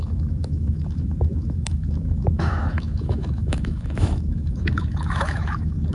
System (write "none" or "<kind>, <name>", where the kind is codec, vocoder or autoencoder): autoencoder, DAC-VAE